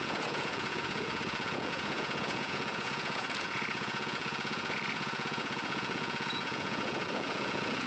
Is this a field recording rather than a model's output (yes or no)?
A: no